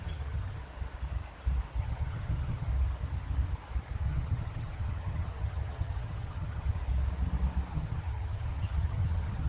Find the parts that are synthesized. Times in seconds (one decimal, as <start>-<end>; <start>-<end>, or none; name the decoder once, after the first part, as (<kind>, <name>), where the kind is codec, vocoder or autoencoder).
0.0-0.6 (vocoder, HiFi-GAN); 1.8-2.7; 4.0-6.8; 7.7-9.5

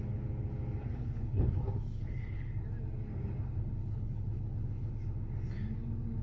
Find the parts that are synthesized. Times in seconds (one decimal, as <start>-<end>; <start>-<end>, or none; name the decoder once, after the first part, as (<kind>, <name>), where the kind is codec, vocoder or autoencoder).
0.8-2.5 (codec, HILCodec); 3.8-4.9

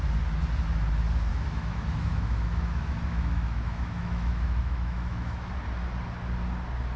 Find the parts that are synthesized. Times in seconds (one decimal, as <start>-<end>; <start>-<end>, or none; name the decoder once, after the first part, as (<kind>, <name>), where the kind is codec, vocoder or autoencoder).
1.3-5.5 (autoencoder, DAC-VAE)

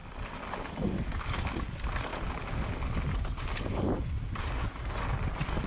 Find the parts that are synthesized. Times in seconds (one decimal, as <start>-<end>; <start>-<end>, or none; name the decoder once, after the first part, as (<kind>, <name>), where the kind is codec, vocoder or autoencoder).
none

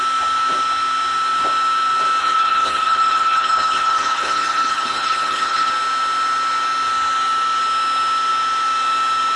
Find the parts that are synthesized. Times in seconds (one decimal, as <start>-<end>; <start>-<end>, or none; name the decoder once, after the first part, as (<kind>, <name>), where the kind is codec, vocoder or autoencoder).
2.2-5.7 (codec, HILCodec)